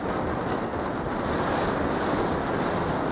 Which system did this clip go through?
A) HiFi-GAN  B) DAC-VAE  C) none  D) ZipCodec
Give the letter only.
C